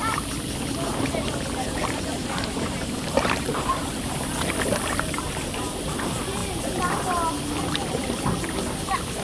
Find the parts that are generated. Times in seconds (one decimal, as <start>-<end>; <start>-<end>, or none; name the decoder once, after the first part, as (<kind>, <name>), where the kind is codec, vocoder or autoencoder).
0.9-5.9 (vocoder, BigVGAN v2)

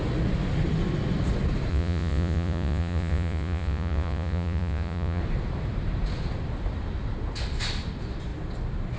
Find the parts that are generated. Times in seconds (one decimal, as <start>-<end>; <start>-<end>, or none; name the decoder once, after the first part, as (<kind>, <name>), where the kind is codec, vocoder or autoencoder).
1.7-5.2 (vocoder, Vocos)

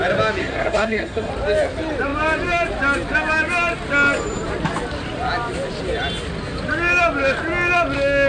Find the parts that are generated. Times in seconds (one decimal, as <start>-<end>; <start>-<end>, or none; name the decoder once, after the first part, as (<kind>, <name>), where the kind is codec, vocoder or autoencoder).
0.4-1.3 (codec, SNAC)

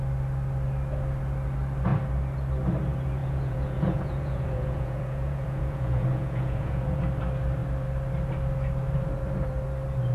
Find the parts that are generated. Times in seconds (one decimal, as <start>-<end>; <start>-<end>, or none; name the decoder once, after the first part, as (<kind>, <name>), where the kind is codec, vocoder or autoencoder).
3.2-7.0 (vocoder, Vocos)